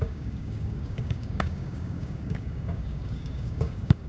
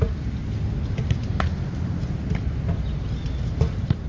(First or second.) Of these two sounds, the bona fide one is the second